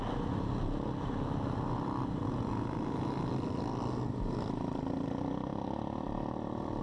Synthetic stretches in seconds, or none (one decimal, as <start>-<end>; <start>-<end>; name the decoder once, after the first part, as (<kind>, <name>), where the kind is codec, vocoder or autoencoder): none